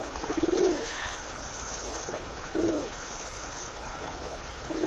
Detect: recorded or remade remade